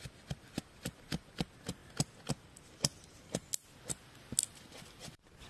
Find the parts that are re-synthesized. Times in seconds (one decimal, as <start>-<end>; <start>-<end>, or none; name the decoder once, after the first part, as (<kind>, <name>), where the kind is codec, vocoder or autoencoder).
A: none